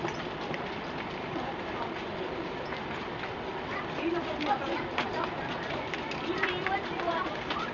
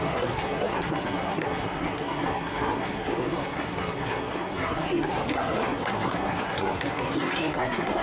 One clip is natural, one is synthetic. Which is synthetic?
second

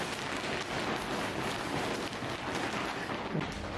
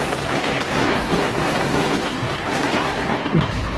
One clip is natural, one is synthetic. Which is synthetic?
second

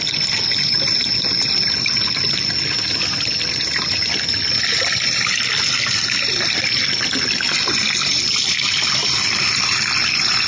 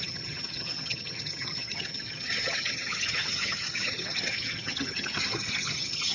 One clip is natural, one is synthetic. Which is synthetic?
second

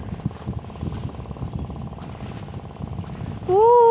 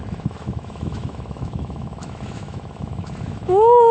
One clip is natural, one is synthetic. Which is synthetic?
second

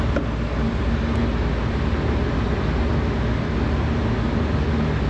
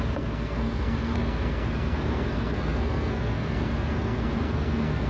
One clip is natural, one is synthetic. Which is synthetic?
second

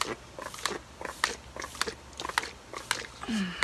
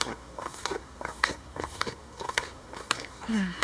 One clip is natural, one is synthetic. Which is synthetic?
second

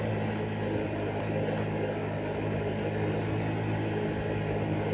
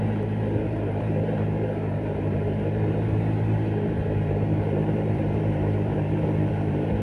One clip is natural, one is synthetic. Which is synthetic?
second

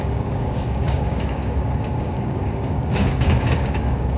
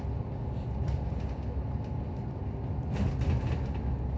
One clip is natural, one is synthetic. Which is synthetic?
first